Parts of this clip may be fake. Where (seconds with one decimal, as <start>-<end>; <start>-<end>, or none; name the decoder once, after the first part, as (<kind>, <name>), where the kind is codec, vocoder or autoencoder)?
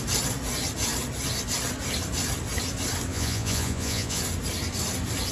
3.1-4.2 (vocoder, Vocos)